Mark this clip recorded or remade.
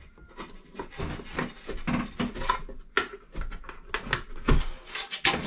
recorded